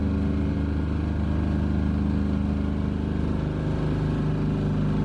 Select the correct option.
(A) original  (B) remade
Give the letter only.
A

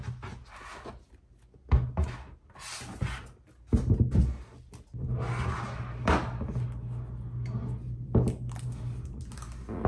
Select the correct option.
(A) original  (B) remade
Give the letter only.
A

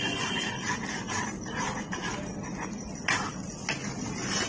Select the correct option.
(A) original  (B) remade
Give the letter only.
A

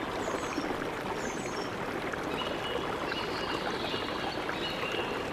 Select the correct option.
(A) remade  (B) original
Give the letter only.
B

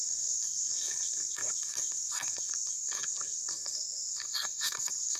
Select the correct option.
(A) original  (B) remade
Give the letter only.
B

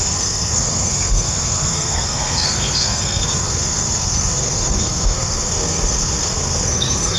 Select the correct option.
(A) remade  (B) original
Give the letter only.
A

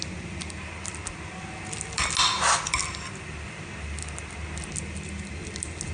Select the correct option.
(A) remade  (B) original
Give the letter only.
B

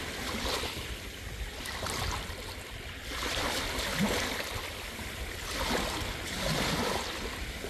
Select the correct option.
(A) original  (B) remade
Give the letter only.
A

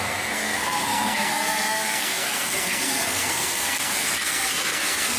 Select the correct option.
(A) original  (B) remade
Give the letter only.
B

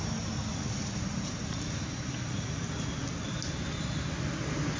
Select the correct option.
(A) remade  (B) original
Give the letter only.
B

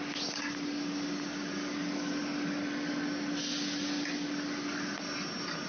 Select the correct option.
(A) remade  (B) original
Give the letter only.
B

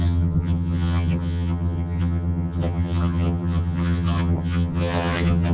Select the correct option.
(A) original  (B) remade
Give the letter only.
B